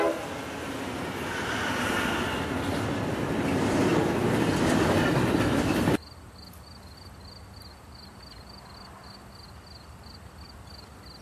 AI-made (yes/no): no